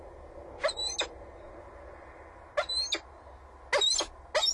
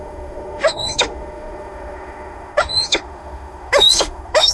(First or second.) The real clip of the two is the first